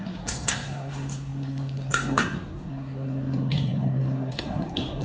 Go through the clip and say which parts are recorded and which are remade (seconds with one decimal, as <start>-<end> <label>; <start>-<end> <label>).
0.0-5.0 remade